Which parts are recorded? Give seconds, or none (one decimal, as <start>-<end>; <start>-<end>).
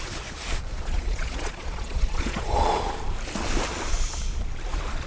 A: 0.0-0.7; 2.9-5.1